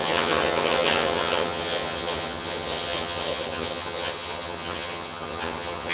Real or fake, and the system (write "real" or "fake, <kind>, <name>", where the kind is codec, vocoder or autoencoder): fake, vocoder, HiFi-GAN